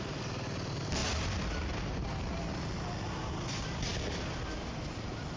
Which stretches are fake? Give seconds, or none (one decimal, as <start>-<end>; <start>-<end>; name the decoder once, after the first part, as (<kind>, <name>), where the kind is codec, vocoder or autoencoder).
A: none